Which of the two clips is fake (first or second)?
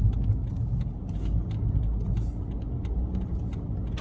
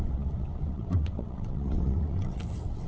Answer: second